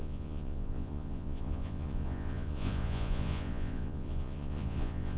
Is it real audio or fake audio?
fake